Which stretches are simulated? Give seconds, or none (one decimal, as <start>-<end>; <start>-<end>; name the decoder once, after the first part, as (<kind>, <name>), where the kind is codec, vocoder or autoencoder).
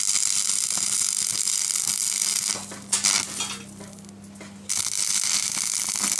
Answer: none